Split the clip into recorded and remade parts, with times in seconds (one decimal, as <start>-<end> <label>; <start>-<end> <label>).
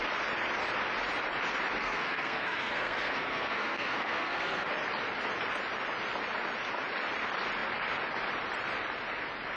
0.0-1.8 recorded; 1.8-4.7 remade; 4.7-9.6 recorded